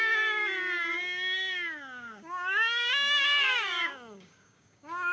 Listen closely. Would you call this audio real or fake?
fake